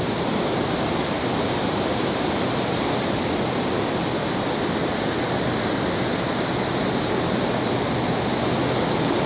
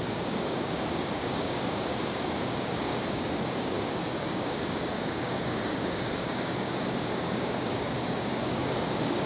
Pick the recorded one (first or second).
first